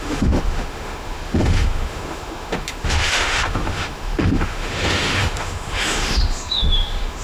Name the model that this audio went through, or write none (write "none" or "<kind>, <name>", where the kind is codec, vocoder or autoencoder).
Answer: autoencoder, DAC-VAE